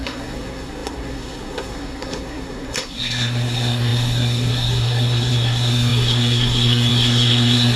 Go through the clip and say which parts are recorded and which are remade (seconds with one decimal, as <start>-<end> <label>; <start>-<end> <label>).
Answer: 0.0-7.8 remade